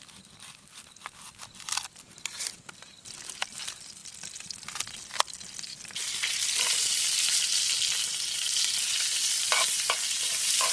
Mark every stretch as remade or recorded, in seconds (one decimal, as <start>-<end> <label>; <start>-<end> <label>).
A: 0.0-4.0 remade; 4.0-5.0 recorded; 5.0-5.7 remade; 5.7-9.9 recorded; 9.9-10.7 remade